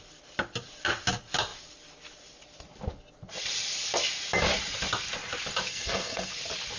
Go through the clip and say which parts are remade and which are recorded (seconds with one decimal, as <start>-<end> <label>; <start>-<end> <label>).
0.0-5.7 recorded; 5.7-6.3 remade; 6.3-6.8 recorded

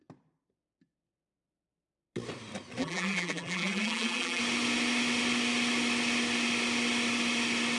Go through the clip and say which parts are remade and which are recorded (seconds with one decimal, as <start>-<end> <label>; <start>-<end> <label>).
0.0-2.8 recorded; 2.8-4.4 remade; 4.4-7.8 recorded